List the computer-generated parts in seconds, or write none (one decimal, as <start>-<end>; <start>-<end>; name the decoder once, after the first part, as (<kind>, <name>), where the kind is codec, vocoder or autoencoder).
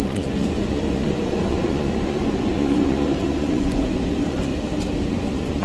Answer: 0.0-4.5 (vocoder, Vocos); 5.1-5.6